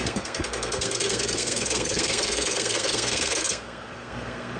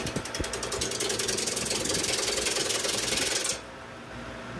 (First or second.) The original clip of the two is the second